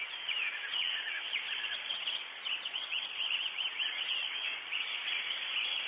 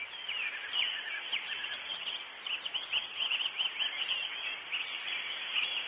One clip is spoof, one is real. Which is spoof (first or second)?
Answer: first